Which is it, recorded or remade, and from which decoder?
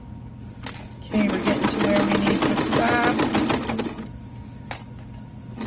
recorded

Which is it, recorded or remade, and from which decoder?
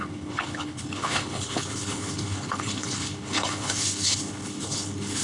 remade, codec, HILCodec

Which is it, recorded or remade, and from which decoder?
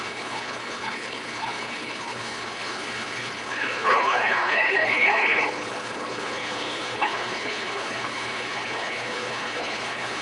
remade, codec, HILCodec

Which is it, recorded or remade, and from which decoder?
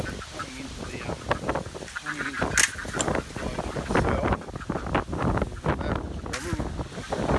recorded